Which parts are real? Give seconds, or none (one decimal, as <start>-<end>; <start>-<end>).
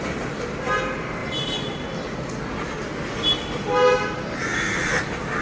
0.0-5.4